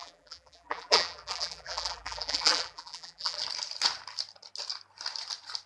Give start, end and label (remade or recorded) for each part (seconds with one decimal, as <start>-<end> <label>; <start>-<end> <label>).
0.0-3.4 remade; 3.4-5.7 recorded